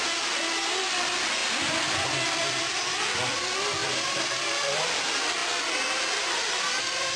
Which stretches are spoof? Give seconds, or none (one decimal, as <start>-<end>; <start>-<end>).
1.4-2.7; 3.8-4.9